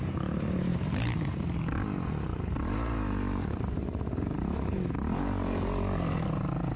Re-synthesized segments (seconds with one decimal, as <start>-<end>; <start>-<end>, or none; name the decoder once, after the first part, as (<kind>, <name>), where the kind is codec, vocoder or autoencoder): 0.7-1.4 (vocoder, BigVGAN v2); 2.3-4.7